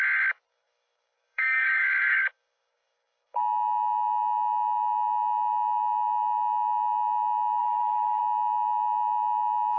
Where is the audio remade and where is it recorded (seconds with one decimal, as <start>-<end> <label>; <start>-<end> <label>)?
0.0-0.5 recorded; 0.5-3.4 remade; 3.4-7.6 recorded; 7.6-8.2 remade; 8.2-9.8 recorded